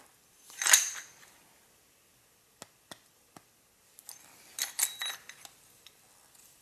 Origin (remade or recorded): recorded